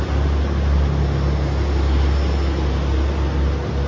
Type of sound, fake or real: real